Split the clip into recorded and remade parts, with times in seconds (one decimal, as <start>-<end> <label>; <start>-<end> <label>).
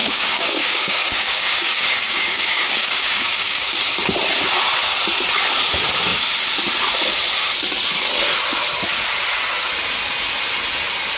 0.0-3.8 remade; 3.8-11.2 recorded